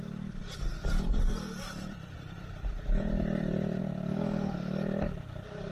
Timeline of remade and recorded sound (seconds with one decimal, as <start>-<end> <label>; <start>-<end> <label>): 0.0-0.4 recorded; 0.4-3.8 remade; 3.8-5.7 recorded